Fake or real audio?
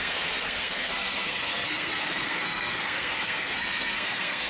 fake